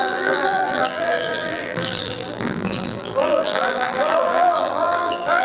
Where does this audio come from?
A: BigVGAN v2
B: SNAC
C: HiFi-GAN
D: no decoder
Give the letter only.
A